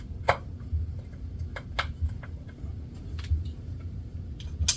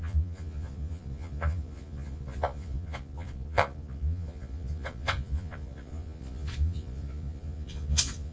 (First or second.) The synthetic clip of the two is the second